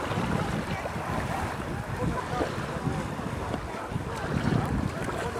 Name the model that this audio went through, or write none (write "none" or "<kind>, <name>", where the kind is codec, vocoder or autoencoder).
none